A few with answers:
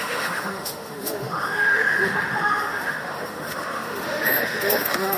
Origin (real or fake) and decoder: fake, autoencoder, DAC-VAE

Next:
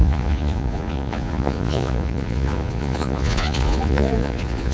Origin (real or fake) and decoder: fake, vocoder, Vocos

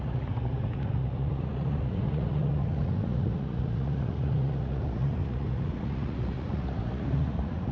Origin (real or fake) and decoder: fake, vocoder, Vocos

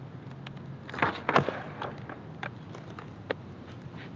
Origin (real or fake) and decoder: real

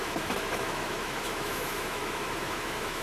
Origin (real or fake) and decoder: fake, autoencoder, DAC-VAE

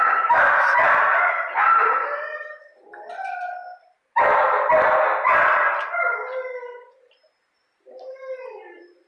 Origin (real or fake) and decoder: real